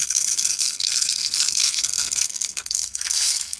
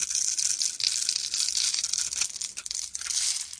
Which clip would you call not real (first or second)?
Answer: first